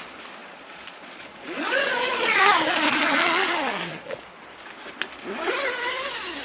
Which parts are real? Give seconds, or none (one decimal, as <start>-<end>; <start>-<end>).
0.0-0.4; 4.2-6.4